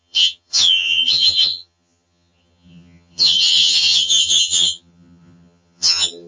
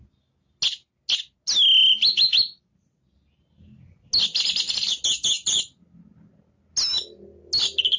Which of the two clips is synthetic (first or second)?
first